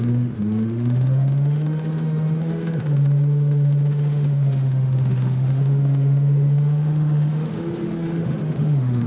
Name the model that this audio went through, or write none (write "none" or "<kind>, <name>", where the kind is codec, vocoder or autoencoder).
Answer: autoencoder, DAC-VAE